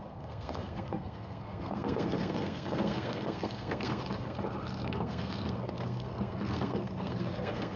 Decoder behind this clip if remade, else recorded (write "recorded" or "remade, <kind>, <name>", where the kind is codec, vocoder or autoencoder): remade, codec, SNAC